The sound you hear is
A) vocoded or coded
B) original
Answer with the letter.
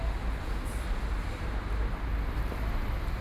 B